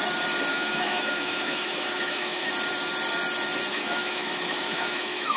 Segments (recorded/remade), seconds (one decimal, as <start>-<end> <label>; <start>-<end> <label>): 0.0-0.5 recorded; 0.5-2.5 remade; 2.5-3.7 recorded; 3.7-5.4 remade